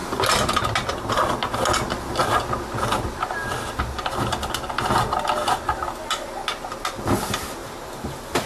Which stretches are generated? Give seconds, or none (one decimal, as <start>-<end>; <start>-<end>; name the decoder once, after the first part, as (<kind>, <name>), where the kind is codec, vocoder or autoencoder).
7.6-8.5 (vocoder, BigVGAN v2)